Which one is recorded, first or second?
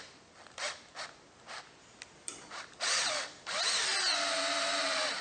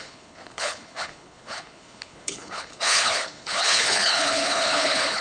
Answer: first